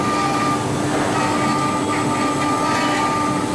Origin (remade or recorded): recorded